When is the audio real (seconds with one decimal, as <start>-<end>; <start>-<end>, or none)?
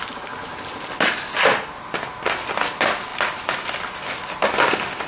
0.0-5.1